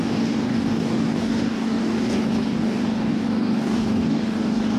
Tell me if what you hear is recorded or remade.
remade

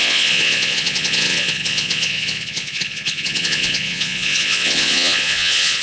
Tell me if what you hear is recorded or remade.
remade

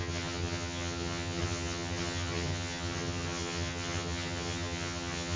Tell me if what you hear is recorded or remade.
remade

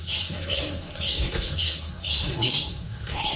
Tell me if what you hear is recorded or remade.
remade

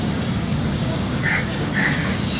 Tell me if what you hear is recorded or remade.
remade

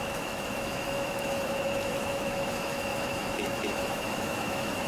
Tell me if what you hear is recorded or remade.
remade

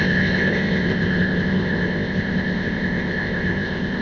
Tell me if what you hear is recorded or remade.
remade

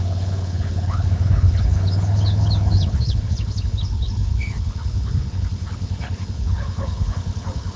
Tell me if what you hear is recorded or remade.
remade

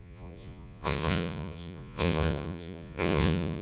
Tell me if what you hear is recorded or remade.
remade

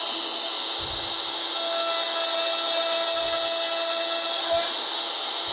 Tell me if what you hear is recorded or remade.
recorded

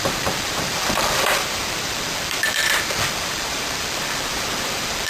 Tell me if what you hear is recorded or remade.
remade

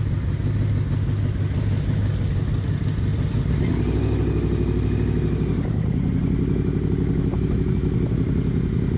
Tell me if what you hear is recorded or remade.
recorded